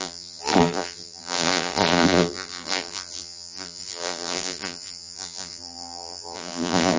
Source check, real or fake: fake